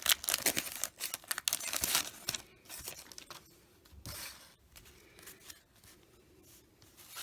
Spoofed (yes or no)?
no